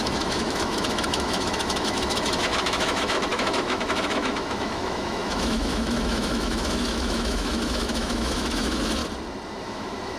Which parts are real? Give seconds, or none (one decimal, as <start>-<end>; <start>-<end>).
9.0-9.6